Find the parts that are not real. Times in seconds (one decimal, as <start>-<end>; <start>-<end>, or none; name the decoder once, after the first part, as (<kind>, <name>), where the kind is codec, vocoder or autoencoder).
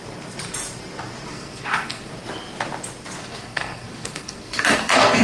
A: 1.3-2.1 (codec, SNAC); 3.2-5.2